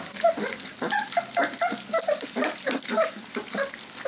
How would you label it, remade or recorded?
recorded